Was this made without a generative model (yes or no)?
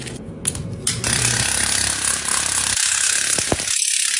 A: yes